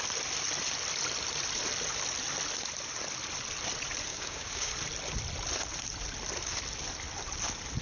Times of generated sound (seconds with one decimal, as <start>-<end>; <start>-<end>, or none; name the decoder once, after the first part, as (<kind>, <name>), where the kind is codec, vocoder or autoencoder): 4.1-4.7 (codec, DAC)

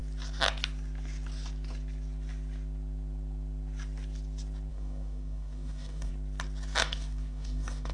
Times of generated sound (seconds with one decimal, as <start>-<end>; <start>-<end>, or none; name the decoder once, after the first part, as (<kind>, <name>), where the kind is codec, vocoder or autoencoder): 4.7-6.1 (codec, DAC); 6.8-7.9

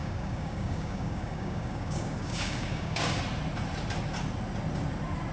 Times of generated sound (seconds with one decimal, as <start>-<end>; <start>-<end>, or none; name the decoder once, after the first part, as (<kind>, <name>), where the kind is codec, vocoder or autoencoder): 0.0-3.2 (codec, DAC)

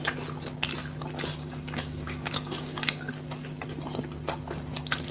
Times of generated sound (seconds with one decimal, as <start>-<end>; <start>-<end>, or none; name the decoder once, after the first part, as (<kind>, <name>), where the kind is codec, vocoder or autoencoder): 1.3-3.1 (codec, DAC)

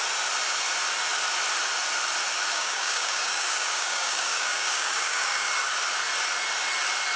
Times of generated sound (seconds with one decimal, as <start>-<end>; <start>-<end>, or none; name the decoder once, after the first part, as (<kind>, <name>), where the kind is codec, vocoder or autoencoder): 2.5-5.5 (codec, DAC)